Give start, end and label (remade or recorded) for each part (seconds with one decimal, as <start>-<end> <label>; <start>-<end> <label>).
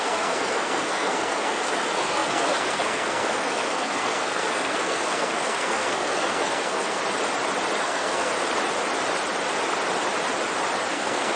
0.0-7.0 remade; 7.0-7.8 recorded; 7.8-8.3 remade; 8.3-10.9 recorded; 10.9-11.4 remade